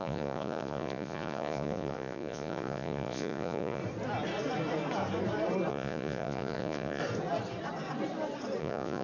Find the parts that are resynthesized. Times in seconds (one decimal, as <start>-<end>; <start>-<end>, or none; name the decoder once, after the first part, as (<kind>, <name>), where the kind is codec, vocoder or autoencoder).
0.0-3.8 (vocoder, Vocos); 5.7-7.0; 8.6-9.0